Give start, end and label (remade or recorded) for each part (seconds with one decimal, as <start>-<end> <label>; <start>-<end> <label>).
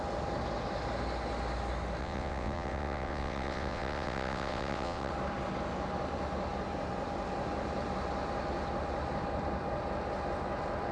0.0-2.0 recorded; 2.0-5.1 remade; 5.1-10.9 recorded